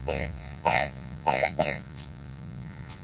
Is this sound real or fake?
fake